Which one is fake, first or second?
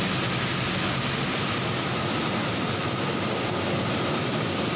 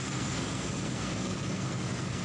second